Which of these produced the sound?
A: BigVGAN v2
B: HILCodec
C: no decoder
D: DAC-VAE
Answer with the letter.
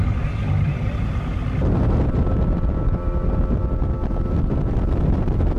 C